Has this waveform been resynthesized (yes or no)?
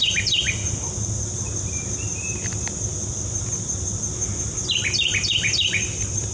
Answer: no